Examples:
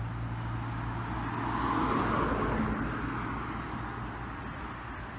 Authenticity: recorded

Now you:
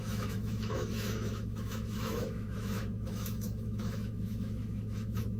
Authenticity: remade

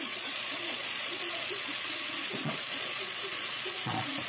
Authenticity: remade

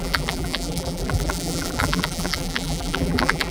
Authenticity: remade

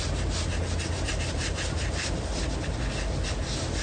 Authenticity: recorded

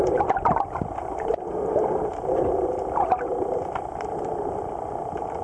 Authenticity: recorded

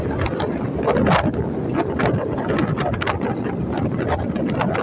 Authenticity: recorded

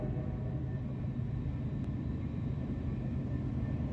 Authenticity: recorded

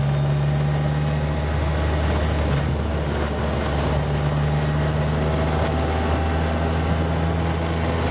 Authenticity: recorded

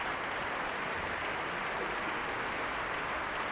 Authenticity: recorded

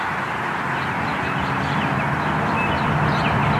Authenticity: recorded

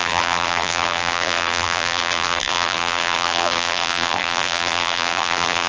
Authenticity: remade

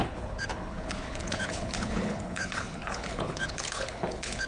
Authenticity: remade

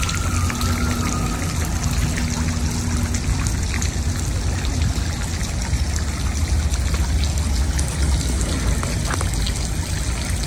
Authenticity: recorded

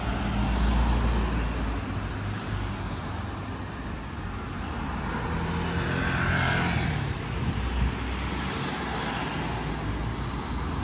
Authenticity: recorded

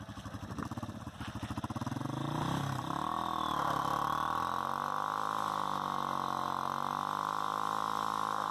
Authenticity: recorded